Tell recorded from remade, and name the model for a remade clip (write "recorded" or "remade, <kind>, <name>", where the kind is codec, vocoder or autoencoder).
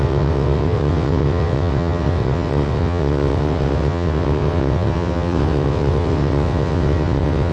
remade, vocoder, WaveNeXt